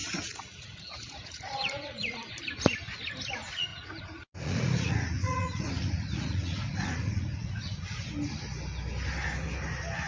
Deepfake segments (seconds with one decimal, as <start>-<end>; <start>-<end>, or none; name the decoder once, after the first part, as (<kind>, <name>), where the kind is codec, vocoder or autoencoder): 0.0-2.4 (vocoder, Vocos); 3.7-7.8